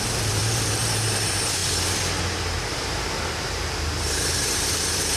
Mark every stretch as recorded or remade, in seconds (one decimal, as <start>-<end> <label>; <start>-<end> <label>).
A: 0.0-1.6 remade; 1.6-2.7 recorded; 2.7-5.2 remade